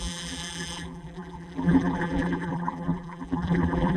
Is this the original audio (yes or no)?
no